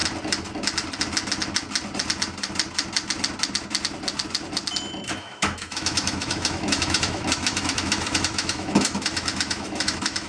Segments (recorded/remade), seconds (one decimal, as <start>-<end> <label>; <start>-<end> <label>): 0.0-5.2 recorded; 5.2-10.3 remade